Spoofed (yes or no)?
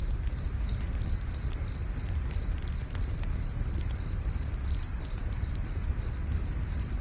no